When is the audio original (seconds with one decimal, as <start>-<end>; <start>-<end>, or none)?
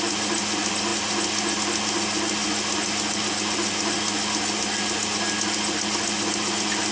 0.0-6.9